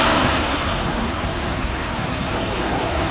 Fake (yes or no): yes